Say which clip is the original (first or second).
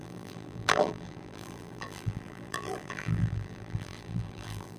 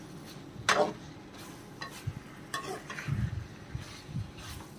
second